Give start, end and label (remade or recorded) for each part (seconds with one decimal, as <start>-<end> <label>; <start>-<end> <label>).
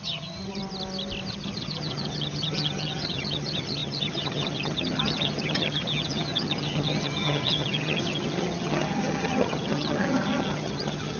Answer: 0.0-0.6 remade; 0.6-1.3 recorded; 1.3-11.2 remade